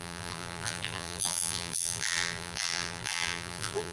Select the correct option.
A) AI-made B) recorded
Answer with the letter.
A